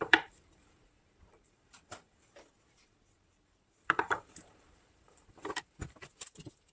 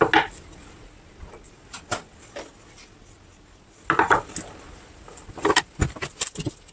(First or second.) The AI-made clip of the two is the first